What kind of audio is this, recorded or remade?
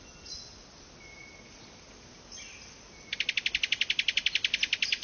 recorded